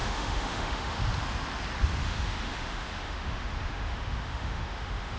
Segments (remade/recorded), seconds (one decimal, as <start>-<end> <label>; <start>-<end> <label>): 0.0-1.0 remade; 1.0-2.0 recorded; 2.0-5.2 remade

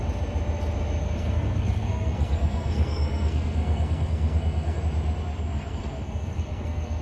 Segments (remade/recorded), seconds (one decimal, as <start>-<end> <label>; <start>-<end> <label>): 0.0-1.0 recorded; 1.0-4.8 remade; 4.8-5.4 recorded; 5.4-7.0 remade

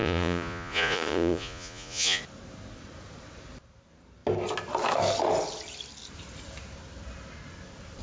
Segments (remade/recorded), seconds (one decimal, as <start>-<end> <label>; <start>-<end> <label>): 0.0-2.2 remade; 2.2-8.0 recorded

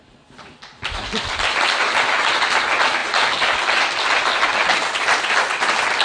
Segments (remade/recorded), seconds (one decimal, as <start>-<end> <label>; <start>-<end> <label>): 0.0-6.0 recorded

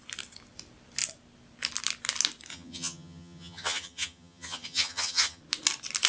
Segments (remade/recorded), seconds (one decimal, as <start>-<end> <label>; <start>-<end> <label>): 0.0-2.5 recorded; 2.5-5.4 remade; 5.4-6.1 recorded